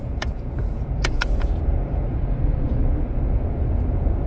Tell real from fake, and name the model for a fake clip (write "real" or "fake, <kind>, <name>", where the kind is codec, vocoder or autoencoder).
fake, vocoder, Vocos